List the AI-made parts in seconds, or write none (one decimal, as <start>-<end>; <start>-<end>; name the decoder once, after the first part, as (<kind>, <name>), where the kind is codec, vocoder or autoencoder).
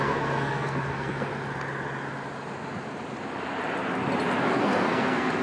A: 0.0-1.3 (codec, SNAC); 4.5-5.4